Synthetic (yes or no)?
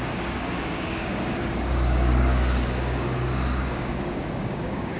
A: yes